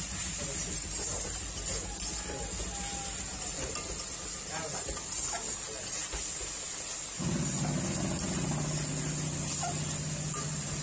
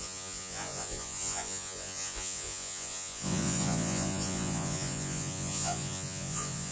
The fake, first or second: second